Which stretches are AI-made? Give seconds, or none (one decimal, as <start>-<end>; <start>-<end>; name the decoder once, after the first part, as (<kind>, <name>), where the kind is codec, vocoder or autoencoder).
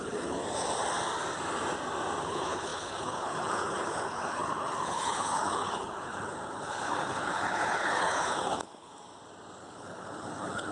0.0-0.4 (codec, HILCodec); 2.2-8.9; 9.6-10.7